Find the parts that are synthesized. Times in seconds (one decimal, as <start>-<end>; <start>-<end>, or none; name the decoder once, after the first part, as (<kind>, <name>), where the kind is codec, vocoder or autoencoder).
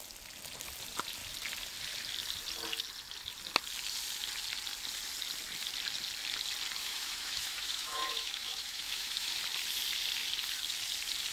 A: 6.8-9.3 (autoencoder, DAC-VAE)